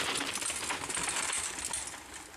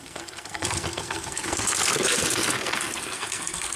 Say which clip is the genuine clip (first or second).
first